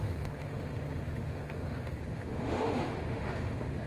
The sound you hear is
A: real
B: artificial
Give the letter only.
B